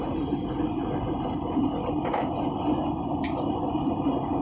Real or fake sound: real